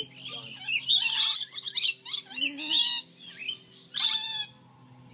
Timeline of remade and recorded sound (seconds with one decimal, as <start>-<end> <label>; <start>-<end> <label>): 0.0-5.1 recorded